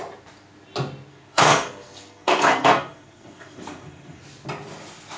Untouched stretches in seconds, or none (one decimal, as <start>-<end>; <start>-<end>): 0.0-1.1; 4.2-5.2